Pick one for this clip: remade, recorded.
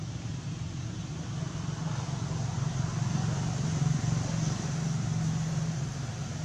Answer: recorded